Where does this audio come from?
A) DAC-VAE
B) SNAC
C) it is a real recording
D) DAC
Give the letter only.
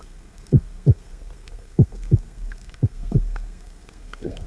B